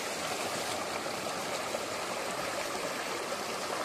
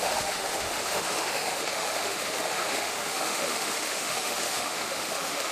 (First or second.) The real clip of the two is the first